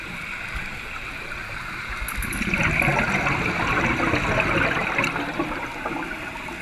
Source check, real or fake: real